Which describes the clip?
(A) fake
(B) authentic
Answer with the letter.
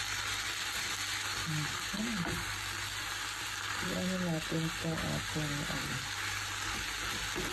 B